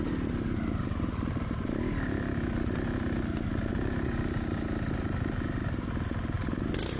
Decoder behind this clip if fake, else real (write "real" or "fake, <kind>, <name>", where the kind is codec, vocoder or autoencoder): real